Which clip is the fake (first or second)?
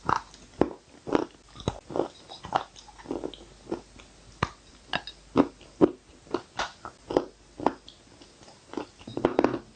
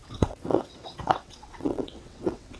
second